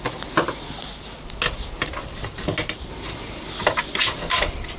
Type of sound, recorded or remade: recorded